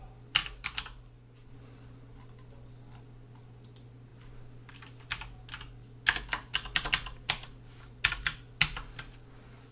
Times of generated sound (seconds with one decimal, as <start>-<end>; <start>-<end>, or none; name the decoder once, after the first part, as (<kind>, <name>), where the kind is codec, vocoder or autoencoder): none

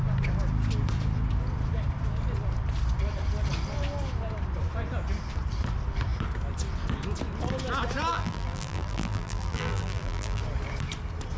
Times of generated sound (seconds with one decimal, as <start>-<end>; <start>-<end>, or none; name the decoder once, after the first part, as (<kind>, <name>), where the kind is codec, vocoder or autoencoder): 8.1-10.4 (vocoder, BigVGAN v2)

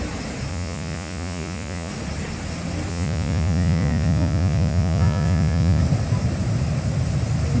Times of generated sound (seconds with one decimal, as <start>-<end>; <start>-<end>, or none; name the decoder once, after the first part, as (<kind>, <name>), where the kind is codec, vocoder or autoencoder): 0.5-1.9 (vocoder, Vocos); 2.9-5.8